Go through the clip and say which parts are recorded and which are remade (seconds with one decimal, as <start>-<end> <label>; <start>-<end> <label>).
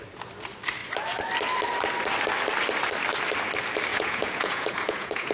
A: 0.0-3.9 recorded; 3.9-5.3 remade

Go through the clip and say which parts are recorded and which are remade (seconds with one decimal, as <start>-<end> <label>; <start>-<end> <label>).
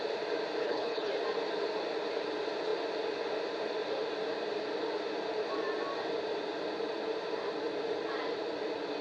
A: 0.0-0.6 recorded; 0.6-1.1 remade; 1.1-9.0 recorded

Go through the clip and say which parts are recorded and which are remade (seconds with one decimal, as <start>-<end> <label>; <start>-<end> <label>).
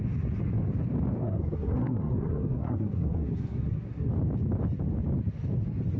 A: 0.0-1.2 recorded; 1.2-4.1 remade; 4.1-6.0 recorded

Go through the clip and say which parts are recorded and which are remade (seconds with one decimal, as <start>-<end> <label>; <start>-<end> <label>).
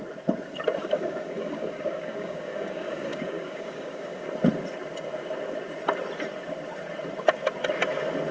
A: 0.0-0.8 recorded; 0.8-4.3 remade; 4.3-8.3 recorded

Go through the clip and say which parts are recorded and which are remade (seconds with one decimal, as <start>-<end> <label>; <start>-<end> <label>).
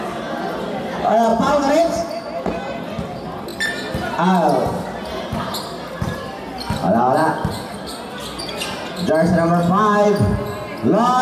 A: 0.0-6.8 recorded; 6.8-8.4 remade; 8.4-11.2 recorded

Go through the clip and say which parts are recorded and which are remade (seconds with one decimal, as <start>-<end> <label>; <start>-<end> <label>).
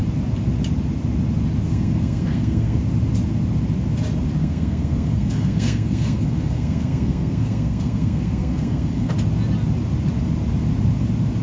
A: 0.0-1.7 recorded; 1.7-2.8 remade; 2.8-4.4 recorded; 4.4-9.1 remade; 9.1-11.4 recorded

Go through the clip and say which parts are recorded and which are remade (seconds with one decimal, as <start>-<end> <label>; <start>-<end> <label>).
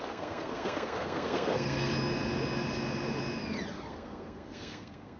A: 0.0-1.9 remade; 1.9-3.7 recorded; 3.7-5.2 remade